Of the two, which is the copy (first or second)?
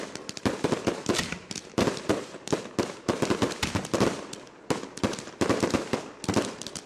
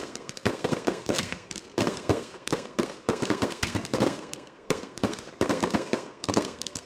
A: second